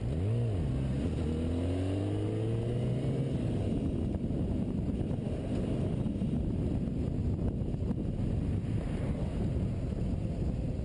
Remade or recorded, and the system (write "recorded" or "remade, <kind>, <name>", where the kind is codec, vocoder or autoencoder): recorded